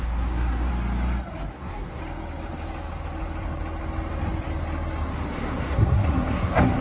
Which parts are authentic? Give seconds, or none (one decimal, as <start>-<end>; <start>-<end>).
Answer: 0.7-1.5; 2.0-5.1